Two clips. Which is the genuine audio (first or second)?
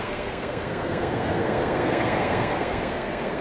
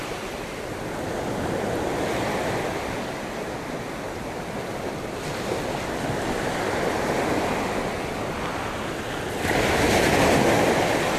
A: second